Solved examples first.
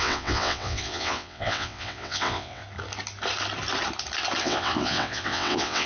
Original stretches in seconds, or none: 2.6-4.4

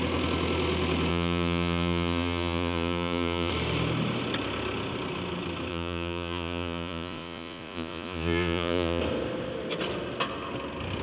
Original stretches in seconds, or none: 0.0-1.1; 3.5-5.7; 9.0-11.0